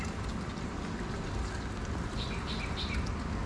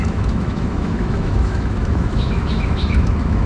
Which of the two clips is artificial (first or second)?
second